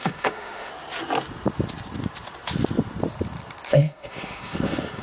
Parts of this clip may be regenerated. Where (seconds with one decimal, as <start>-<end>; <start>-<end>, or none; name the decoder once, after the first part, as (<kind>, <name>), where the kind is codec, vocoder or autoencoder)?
0.0-0.7 (autoencoder, DAC-VAE); 3.7-5.0